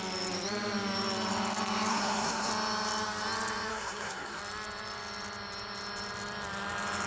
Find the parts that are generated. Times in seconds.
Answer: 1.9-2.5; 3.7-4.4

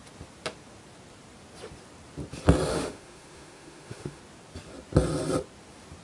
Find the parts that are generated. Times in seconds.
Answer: 2.7-4.2

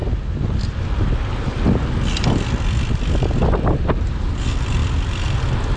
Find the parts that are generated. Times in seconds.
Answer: none

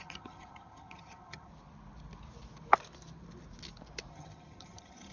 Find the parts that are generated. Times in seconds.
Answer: 0.0-1.5; 4.1-5.1

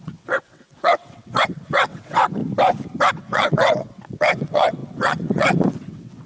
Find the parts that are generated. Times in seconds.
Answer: 0.0-2.4; 3.1-6.3

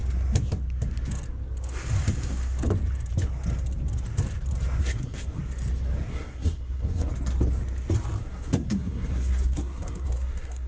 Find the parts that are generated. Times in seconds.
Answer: 4.8-5.4; 6.1-7.1; 8.2-10.7

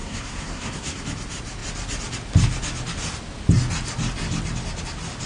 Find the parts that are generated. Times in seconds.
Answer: 0.0-1.0

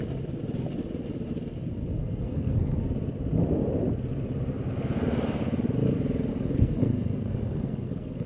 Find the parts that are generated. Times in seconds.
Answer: 2.0-2.8; 6.3-8.3